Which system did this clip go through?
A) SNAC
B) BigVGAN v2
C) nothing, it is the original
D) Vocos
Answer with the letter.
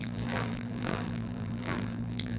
B